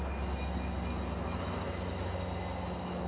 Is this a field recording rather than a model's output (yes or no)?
yes